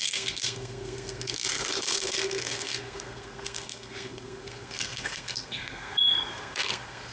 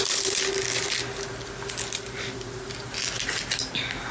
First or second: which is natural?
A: second